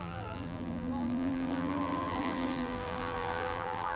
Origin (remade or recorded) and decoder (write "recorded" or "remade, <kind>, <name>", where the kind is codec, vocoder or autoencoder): remade, vocoder, BigVGAN v2